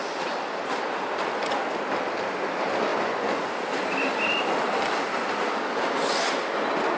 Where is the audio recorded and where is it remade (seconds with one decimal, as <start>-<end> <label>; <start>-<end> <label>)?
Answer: 0.0-2.9 recorded; 2.9-3.4 remade; 3.4-7.0 recorded